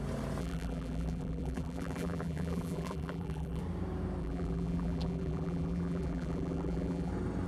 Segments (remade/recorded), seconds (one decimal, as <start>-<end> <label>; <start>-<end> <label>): 0.0-0.4 recorded; 0.4-3.6 remade; 3.6-4.2 recorded; 4.2-7.1 remade; 7.1-7.5 recorded